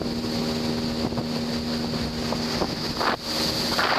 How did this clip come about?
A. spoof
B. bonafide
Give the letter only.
B